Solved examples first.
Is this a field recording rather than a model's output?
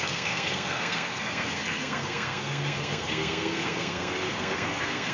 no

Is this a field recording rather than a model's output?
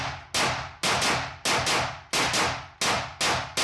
yes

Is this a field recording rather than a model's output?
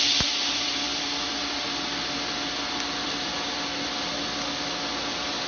yes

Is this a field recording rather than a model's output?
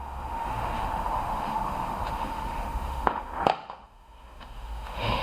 no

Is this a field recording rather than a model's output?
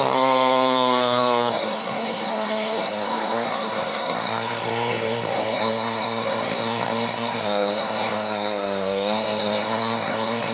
no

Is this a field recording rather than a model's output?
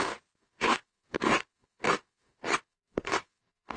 no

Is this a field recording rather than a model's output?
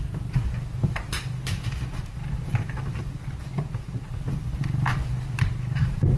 yes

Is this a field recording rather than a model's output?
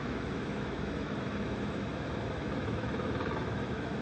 no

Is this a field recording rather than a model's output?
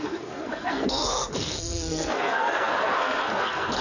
no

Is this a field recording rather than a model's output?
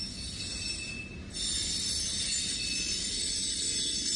yes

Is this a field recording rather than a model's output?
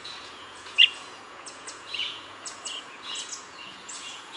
no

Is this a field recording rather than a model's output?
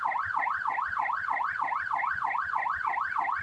yes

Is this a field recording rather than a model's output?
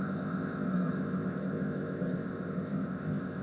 no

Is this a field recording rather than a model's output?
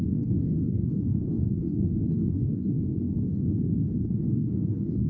no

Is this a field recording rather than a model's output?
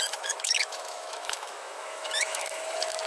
no